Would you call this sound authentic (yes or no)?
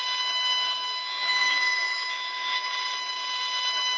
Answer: no